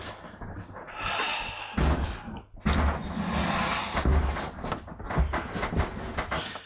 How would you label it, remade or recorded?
recorded